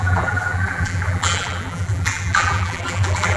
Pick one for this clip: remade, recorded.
remade